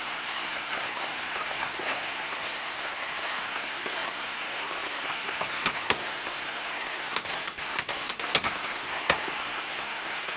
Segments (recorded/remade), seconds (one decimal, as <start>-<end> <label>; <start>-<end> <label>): 0.0-10.4 remade